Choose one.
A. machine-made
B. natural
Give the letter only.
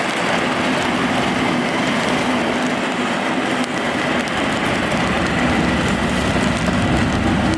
B